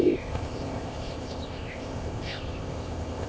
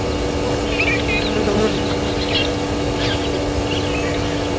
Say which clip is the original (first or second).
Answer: second